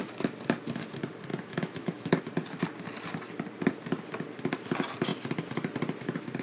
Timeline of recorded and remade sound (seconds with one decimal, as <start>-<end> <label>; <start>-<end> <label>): 0.0-1.3 recorded; 1.3-2.2 remade; 2.2-6.4 recorded